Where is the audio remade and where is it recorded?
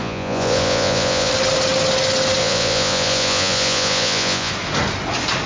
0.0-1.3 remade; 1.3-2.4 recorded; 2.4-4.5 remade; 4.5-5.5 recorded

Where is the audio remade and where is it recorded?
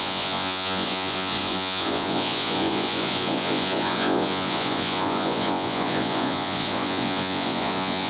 0.0-8.1 remade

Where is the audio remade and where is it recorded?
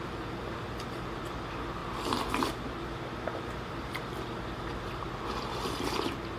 0.0-6.4 recorded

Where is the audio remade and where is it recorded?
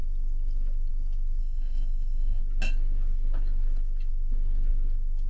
0.0-1.4 recorded; 1.4-2.4 remade; 2.4-5.3 recorded